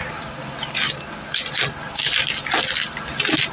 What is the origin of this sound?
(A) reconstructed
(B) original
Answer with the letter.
B